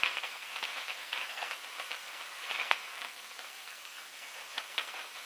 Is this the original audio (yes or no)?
no